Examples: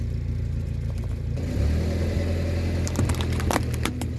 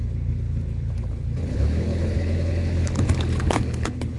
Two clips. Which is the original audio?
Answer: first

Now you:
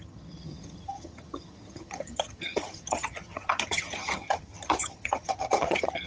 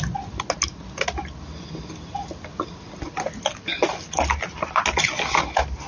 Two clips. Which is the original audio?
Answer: second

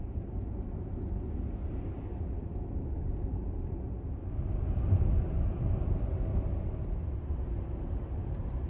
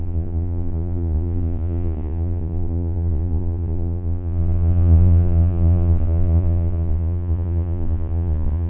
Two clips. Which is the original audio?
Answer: first